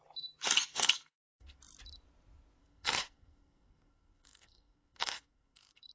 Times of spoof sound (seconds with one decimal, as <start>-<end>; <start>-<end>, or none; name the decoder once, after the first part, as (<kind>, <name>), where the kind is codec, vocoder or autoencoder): 0.7-1.6 (codec, SNAC); 2.6-5.9